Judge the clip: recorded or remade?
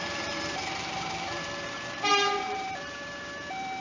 remade